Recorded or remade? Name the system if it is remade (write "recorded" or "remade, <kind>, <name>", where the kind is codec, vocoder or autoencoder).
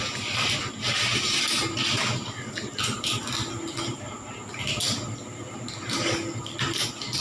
recorded